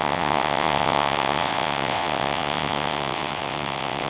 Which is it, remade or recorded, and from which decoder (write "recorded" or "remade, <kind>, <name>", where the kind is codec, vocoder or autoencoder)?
remade, vocoder, WaveNeXt